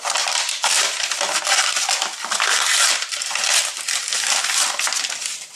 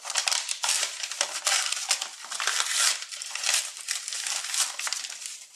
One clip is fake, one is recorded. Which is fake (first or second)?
second